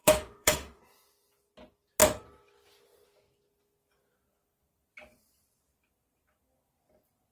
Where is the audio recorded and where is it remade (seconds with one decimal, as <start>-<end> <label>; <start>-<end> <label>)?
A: 0.0-0.8 remade; 0.8-7.3 recorded